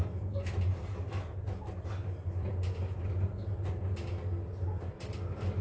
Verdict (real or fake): real